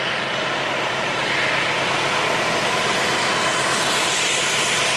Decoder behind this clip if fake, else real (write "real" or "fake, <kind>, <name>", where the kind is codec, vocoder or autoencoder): real